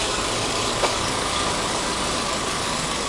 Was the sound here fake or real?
fake